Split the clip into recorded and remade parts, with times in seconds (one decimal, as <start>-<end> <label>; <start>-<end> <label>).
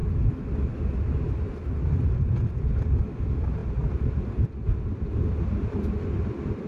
0.0-6.7 recorded